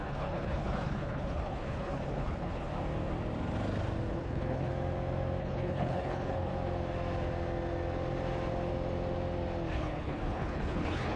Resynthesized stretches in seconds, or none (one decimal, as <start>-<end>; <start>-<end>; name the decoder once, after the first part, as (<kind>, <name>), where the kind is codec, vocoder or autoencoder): 0.0-2.6 (codec, HILCodec); 4.1-4.7; 5.4-6.5; 9.7-11.2